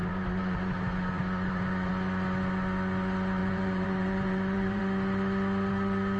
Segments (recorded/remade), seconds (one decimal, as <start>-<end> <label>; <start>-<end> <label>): 0.0-1.9 remade; 1.9-3.4 recorded; 3.4-4.8 remade; 4.8-6.2 recorded

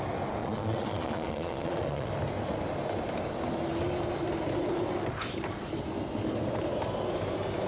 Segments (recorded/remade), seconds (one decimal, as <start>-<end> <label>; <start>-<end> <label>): 0.0-0.4 recorded; 0.4-2.1 remade; 2.1-7.7 recorded

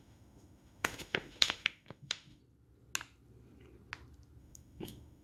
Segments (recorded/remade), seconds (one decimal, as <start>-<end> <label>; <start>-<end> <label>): 0.0-2.4 remade; 2.4-4.4 recorded; 4.4-5.2 remade

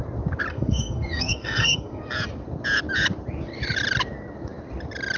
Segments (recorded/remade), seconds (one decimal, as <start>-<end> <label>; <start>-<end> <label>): 0.0-0.5 recorded; 0.5-2.0 remade; 2.0-5.2 recorded

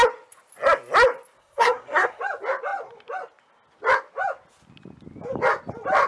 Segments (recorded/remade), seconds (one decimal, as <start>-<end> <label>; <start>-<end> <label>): 0.0-1.4 recorded; 1.4-2.2 remade; 2.2-6.1 recorded

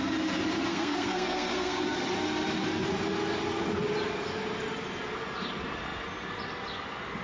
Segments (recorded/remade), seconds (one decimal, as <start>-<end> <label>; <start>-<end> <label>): 0.0-0.7 recorded; 0.7-1.8 remade; 1.8-7.2 recorded